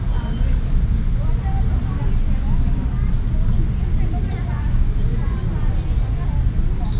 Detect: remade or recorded recorded